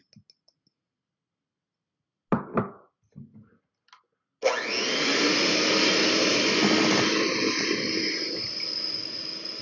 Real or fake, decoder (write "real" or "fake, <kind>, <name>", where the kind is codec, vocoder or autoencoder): real